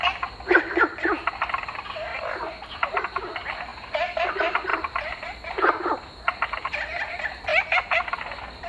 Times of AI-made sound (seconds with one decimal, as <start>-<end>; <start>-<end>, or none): 2.1-3.0; 4.7-5.7